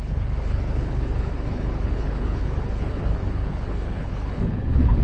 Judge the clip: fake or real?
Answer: fake